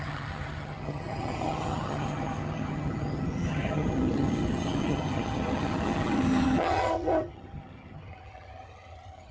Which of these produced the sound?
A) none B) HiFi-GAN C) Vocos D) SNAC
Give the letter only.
B